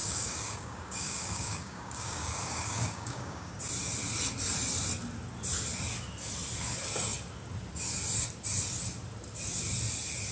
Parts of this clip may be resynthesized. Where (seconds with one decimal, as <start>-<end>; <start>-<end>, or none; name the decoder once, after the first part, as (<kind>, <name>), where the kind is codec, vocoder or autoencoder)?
0.0-3.5 (codec, DAC)